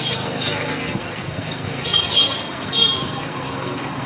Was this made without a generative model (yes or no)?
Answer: no